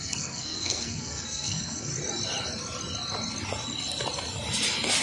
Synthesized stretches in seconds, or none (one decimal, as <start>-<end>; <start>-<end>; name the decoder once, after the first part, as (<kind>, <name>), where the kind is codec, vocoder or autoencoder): 0.0-1.9 (codec, SNAC)